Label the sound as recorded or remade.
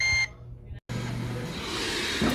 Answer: recorded